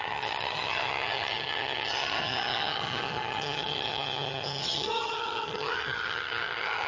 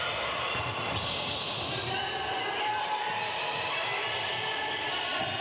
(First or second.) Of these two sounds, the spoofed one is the first